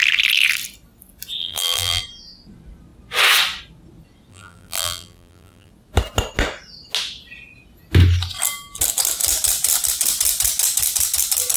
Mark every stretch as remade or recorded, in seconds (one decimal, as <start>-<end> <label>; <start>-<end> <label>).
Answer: 0.0-1.4 recorded; 1.4-2.0 remade; 2.0-4.3 recorded; 4.3-5.7 remade; 5.7-11.6 recorded